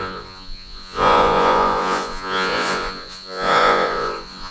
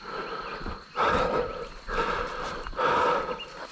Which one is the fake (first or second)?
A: first